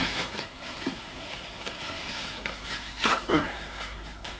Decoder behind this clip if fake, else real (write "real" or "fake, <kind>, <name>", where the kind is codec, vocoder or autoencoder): fake, codec, SNAC